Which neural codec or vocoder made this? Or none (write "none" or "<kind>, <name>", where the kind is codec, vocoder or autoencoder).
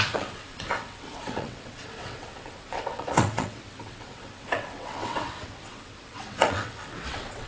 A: vocoder, WaveNeXt